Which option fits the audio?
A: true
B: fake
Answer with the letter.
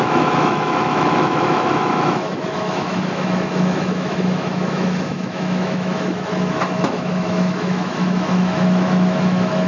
B